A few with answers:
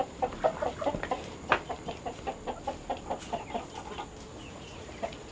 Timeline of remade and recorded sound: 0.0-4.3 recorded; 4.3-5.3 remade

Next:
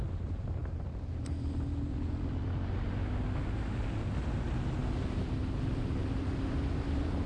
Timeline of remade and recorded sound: 0.0-7.3 recorded